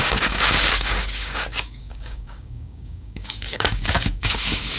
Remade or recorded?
remade